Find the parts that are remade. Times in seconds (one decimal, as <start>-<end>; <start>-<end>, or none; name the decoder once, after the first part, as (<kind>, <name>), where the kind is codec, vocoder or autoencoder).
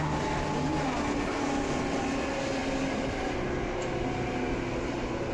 none